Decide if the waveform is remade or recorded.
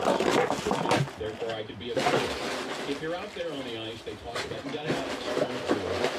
recorded